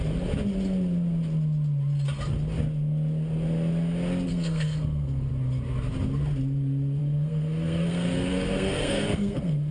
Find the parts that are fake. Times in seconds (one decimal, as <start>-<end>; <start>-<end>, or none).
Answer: 4.3-5.3; 7.0-9.7